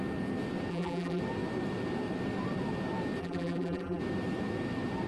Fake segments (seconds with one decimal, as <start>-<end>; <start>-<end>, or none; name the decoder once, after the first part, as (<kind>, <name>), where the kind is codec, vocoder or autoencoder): 0.7-1.2 (vocoder, BigVGAN v2); 3.2-4.0